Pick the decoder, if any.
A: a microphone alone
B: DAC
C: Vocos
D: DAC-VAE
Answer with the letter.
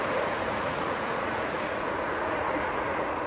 C